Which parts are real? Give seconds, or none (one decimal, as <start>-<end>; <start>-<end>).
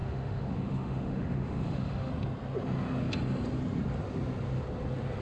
2.1-5.2